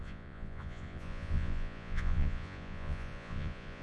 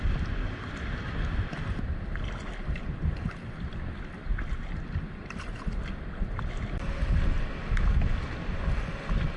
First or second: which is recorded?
second